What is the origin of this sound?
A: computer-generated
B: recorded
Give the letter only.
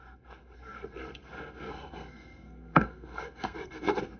A